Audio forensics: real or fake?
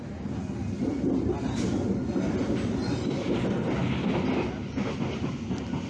real